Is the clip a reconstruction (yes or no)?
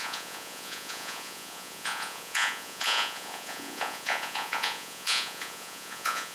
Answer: yes